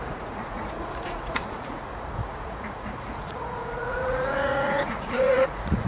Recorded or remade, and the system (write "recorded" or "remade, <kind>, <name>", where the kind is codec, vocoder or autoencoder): remade, vocoder, Vocos